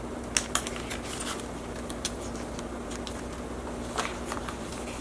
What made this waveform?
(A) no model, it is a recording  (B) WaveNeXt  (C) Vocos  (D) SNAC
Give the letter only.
A